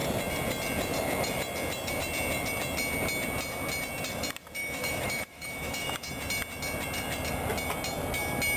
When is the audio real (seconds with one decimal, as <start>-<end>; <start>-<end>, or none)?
0.0-4.6; 6.1-8.6